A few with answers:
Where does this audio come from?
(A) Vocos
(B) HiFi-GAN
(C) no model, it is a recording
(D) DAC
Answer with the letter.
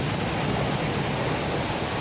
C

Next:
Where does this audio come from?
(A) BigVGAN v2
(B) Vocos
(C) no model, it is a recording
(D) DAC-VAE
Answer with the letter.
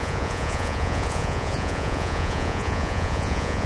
B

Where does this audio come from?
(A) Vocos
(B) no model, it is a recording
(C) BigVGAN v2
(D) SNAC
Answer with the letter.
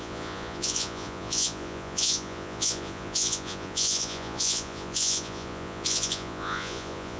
A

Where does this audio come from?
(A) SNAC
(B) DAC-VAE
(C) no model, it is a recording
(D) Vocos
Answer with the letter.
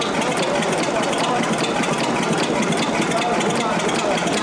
C